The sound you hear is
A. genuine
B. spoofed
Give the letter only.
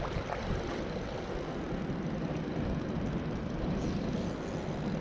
A